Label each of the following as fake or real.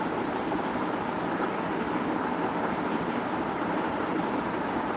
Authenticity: real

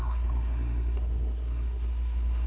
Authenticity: fake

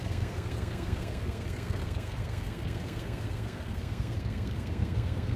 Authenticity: fake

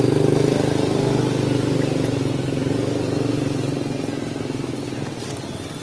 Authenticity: real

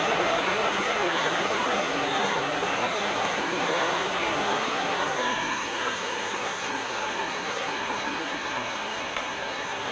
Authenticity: fake